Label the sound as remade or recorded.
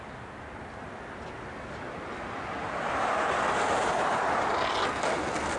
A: recorded